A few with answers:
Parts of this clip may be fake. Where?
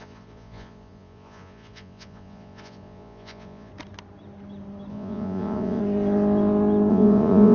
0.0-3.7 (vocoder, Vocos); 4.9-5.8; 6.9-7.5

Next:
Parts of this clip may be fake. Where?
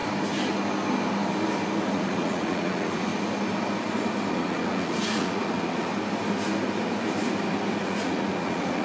1.9-3.1 (vocoder, Vocos); 4.3-5.9; 7.8-8.8